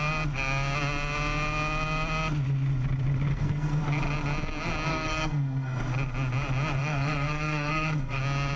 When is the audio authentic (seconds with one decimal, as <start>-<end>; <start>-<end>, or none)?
0.0-3.3; 3.8-4.9; 5.8-6.8; 8.2-8.6